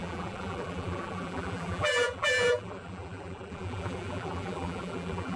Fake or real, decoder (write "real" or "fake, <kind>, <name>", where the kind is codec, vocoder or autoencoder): fake, vocoder, BigVGAN v2